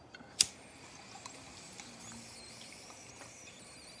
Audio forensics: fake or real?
real